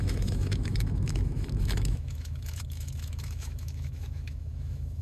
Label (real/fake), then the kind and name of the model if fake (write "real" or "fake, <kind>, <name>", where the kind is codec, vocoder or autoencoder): fake, autoencoder, DAC-VAE